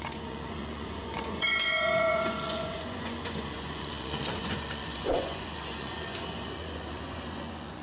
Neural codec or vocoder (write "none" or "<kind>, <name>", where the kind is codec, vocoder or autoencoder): vocoder, Vocos